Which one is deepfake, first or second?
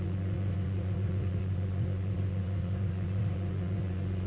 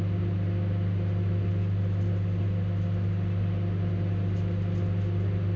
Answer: first